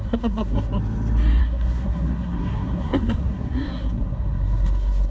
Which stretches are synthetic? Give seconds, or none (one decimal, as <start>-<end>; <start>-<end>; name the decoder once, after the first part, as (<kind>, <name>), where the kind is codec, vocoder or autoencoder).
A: 0.0-0.7 (codec, SNAC); 1.4-5.1